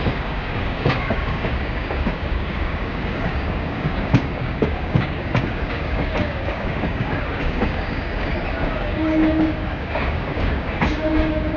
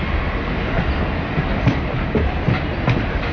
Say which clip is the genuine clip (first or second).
second